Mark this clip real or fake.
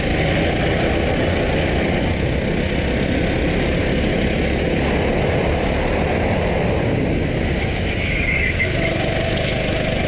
real